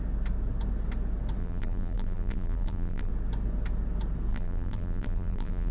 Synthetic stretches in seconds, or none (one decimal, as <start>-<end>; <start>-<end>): 1.4-3.1; 4.3-5.7